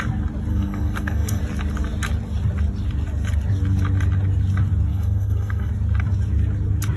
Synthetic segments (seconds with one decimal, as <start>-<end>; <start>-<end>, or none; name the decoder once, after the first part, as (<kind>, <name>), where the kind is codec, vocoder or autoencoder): 0.5-1.4 (codec, SNAC); 4.9-5.7